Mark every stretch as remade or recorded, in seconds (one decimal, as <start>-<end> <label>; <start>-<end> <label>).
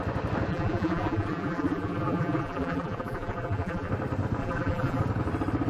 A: 0.0-0.5 recorded; 0.5-3.9 remade; 3.9-4.4 recorded; 4.4-5.0 remade; 5.0-5.7 recorded